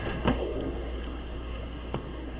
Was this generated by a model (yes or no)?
yes